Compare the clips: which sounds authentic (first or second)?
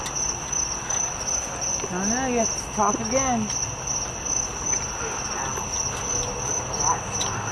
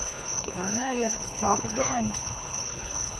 first